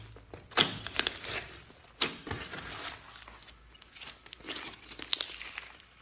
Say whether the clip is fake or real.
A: real